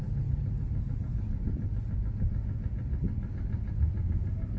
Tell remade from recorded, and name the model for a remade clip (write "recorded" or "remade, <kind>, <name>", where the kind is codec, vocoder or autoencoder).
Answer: recorded